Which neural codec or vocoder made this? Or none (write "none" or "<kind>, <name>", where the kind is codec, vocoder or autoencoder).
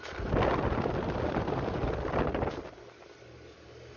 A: none